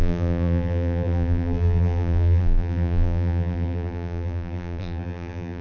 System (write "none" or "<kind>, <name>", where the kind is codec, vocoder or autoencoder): vocoder, BigVGAN v2